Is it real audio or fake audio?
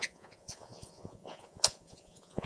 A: fake